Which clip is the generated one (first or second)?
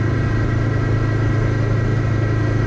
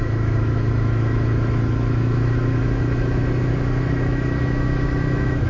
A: second